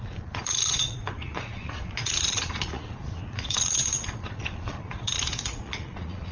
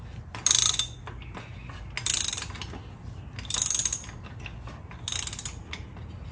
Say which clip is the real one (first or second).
second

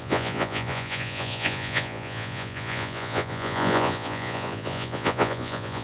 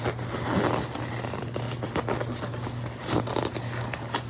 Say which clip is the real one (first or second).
second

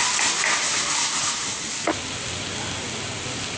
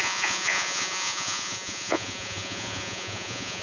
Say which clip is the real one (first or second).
first